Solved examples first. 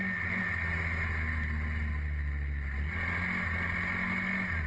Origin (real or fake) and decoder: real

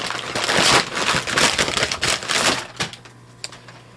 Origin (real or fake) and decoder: real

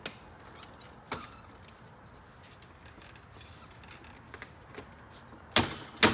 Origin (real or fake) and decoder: real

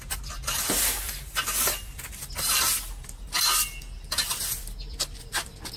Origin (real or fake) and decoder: real